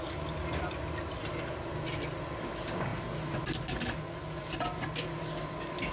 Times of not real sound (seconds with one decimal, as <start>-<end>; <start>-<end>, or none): none

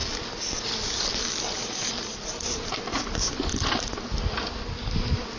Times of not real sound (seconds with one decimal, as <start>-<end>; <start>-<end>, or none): none

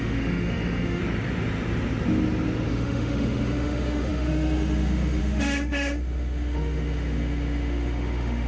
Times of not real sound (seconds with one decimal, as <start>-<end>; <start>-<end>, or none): 0.0-1.0; 2.7-8.5